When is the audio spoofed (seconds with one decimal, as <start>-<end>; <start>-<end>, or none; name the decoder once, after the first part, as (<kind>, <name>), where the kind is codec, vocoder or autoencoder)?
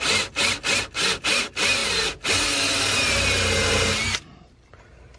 none